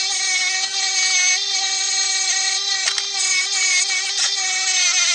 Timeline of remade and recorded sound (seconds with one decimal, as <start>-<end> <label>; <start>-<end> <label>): 0.0-5.1 recorded